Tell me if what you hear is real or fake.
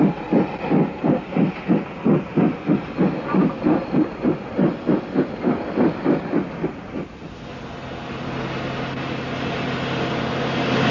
real